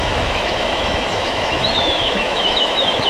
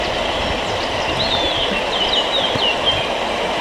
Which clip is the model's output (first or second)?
first